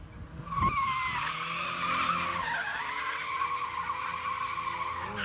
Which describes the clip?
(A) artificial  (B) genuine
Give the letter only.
B